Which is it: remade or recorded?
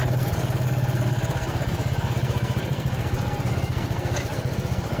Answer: remade